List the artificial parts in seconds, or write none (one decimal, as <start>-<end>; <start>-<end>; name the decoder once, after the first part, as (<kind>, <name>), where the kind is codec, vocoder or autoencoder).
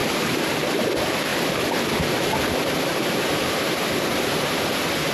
none